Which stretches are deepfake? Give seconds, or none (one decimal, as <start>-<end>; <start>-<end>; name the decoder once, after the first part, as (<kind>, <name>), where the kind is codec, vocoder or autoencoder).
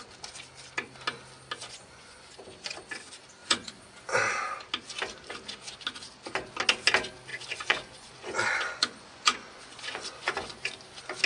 1.6-2.4 (vocoder, Vocos); 3.4-4.2; 7.3-10.7